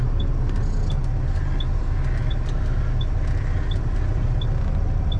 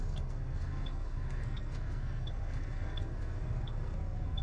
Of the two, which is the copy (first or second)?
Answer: second